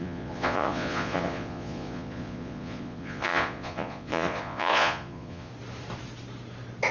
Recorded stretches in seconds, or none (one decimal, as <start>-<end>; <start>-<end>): 5.5-6.9